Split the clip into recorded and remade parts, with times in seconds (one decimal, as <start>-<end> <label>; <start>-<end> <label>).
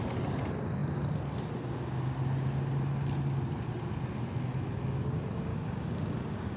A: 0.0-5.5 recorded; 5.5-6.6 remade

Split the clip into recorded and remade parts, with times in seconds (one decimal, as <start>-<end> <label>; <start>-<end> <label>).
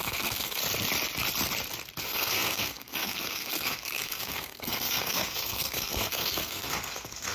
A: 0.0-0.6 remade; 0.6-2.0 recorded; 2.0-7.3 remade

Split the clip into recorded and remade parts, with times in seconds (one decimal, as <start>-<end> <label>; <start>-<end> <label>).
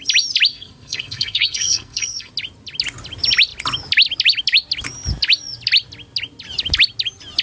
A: 0.0-0.5 recorded; 0.5-2.3 remade; 2.3-7.4 recorded